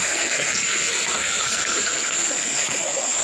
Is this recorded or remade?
remade